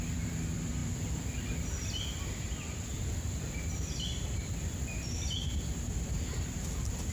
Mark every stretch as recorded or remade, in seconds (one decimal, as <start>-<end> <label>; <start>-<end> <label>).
0.0-7.1 remade